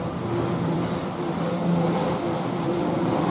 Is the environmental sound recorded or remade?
remade